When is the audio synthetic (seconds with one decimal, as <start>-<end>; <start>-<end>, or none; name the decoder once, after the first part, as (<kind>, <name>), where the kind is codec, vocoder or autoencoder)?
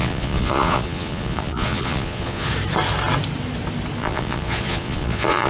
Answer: 0.0-2.5 (vocoder, Vocos); 4.0-5.5